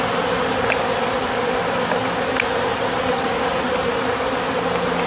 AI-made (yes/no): no